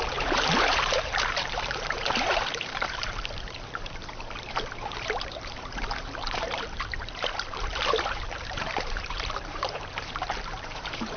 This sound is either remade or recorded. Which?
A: remade